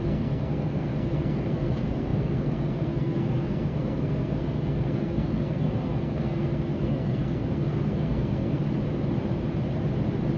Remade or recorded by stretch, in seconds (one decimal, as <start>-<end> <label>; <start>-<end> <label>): 0.0-8.6 remade; 8.6-10.4 recorded